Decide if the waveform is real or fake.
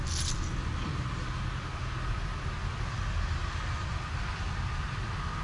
real